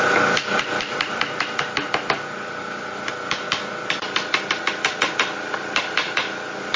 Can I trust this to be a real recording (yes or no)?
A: yes